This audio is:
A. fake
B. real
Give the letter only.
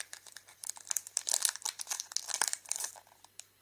A